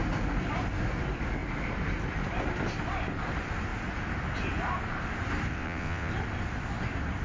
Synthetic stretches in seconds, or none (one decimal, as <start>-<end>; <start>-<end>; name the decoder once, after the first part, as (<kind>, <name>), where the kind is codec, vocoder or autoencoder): 5.5-6.1 (vocoder, WaveNeXt)